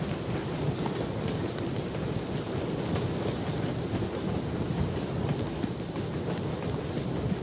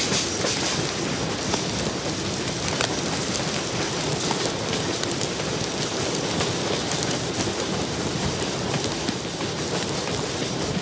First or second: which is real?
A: first